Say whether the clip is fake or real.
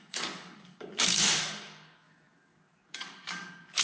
fake